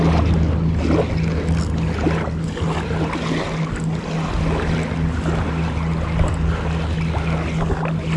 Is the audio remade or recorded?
recorded